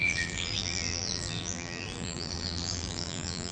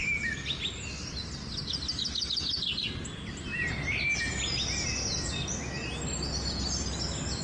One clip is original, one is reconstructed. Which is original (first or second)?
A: second